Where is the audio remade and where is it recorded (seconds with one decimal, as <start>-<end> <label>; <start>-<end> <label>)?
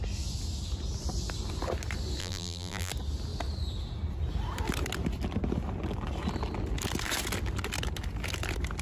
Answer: 0.0-2.2 recorded; 2.2-2.9 remade; 2.9-8.8 recorded